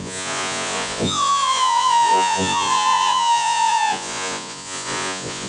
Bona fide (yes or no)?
no